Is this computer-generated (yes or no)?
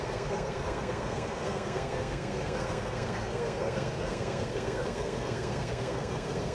yes